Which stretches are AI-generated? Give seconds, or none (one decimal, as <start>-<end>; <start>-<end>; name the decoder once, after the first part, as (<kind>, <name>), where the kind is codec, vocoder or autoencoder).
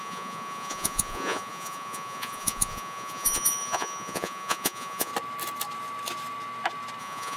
0.0-5.1 (vocoder, Vocos); 7.0-7.4